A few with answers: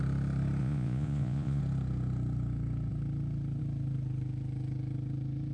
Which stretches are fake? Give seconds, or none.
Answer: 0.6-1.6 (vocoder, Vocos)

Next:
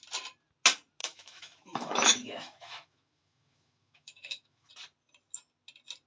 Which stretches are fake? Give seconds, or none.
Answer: 1.0-4.7 (autoencoder, DAC-VAE)

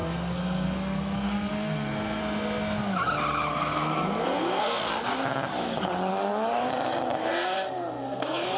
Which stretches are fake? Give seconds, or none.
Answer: 0.0-2.2 (codec, SNAC); 3.5-4.9; 6.1-6.7; 7.2-8.6

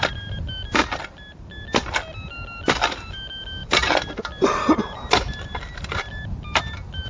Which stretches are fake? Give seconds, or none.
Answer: none